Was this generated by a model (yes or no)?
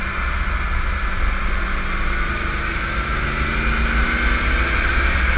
no